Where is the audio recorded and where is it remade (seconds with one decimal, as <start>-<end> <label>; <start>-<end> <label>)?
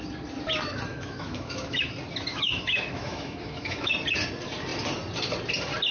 0.0-0.9 recorded; 0.9-1.9 remade; 1.9-2.3 recorded; 2.3-3.9 remade; 3.9-5.9 recorded